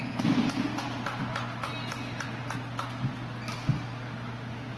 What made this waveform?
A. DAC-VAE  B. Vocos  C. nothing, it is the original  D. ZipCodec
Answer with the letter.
C